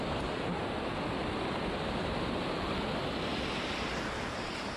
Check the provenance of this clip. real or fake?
fake